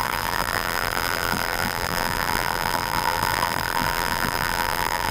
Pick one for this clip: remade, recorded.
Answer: remade